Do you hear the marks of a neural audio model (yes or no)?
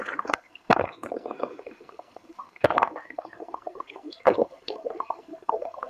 yes